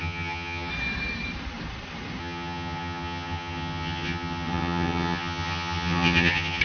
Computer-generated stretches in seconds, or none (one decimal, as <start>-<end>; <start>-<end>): 0.0-0.7; 2.2-6.6